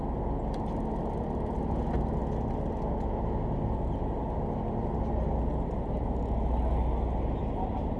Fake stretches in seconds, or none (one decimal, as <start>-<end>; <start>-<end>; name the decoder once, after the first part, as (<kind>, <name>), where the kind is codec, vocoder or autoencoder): none